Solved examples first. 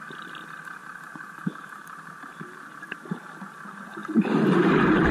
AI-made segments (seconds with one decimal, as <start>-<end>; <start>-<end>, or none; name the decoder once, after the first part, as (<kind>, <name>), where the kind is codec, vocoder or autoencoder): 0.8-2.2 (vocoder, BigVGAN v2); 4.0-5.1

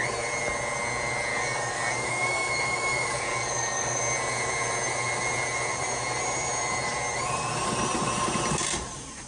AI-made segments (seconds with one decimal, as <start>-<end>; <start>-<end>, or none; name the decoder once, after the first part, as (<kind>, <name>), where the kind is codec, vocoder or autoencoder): 1.3-4.0 (codec, DAC)

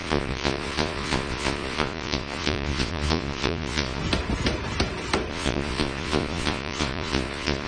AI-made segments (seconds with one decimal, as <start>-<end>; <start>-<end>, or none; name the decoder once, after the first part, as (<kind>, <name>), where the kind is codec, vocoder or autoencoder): 0.0-4.0 (vocoder, Vocos); 5.3-7.7

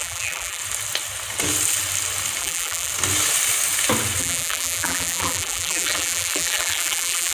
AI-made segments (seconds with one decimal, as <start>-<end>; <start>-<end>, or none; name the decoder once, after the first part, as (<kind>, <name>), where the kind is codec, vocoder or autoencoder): 0.0-0.6 (vocoder, BigVGAN v2); 2.4-2.9; 4.2-7.3

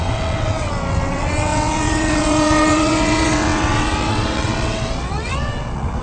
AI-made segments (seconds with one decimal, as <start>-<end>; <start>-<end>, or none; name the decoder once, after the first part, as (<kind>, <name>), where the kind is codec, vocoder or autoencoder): 0.0-6.0 (vocoder, WaveNeXt)

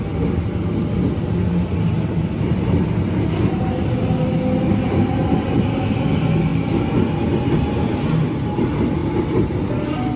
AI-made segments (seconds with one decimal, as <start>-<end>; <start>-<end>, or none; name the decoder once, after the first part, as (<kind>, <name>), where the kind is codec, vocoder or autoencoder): none

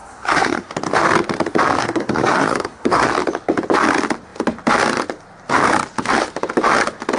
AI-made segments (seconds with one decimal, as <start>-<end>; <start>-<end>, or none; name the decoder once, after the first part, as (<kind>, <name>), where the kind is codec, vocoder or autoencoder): 0.0-0.7 (codec, SNAC); 1.8-3.1

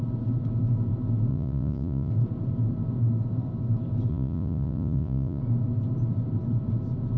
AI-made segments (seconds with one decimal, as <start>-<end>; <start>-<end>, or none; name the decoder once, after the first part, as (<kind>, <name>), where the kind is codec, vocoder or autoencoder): 1.3-2.1 (vocoder, Vocos); 4.1-5.4